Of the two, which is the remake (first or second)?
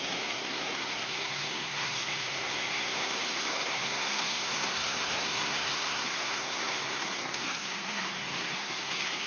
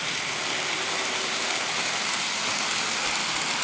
first